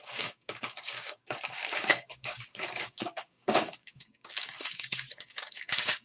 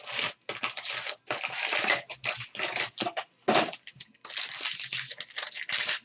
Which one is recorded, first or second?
second